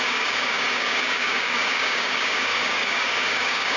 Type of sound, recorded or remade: remade